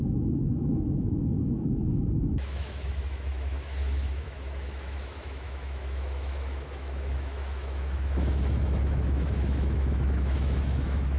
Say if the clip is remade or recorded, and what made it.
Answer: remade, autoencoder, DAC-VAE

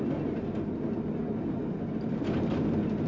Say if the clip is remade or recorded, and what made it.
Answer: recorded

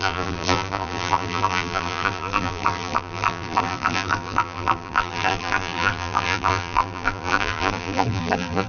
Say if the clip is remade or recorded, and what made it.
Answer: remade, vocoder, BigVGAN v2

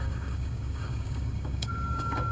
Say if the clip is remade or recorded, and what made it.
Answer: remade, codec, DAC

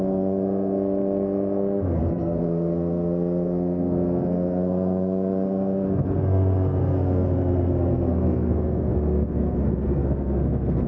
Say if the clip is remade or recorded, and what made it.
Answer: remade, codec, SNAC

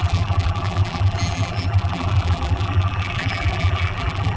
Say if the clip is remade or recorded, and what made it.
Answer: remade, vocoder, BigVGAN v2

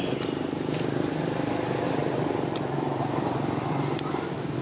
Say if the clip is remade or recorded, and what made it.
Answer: remade, vocoder, BigVGAN v2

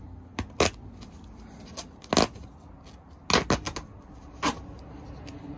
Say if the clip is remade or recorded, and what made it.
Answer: recorded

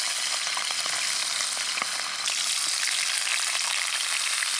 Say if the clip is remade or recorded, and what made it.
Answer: recorded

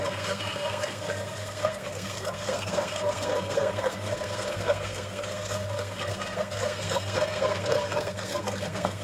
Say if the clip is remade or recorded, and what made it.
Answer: remade, codec, SNAC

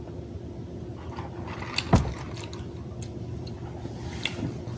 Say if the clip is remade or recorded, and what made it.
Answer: recorded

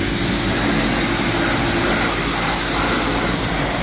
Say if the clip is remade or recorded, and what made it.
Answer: recorded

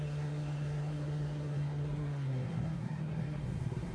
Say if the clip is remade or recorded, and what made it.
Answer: remade, codec, SNAC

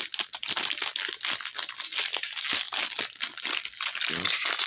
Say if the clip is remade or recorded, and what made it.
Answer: recorded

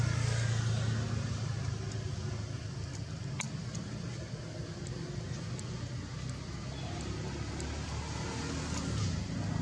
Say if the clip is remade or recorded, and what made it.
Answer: recorded